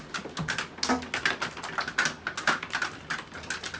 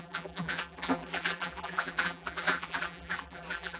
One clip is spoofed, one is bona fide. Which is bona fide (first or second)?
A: first